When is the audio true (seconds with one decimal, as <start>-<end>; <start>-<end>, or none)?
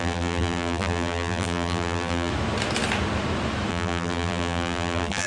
2.3-3.7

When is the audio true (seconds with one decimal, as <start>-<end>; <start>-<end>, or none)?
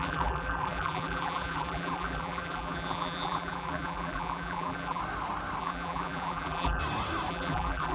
5.0-5.6; 6.8-7.3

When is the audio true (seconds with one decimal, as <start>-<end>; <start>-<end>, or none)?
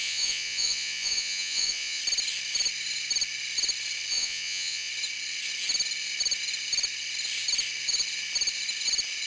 2.0-4.1; 4.9-9.3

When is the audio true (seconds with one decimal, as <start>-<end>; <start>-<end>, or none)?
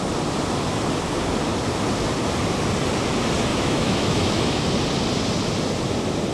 0.0-3.5; 4.7-6.3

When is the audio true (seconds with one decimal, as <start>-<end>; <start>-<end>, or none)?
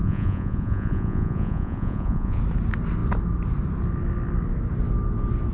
2.4-5.5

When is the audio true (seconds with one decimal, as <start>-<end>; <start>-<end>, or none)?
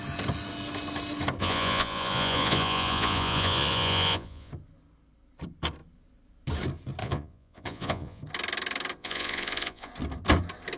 0.0-1.4; 4.5-7.0; 8.2-9.0; 9.9-10.8